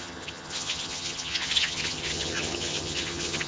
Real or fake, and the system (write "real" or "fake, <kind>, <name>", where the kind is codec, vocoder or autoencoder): fake, vocoder, HiFi-GAN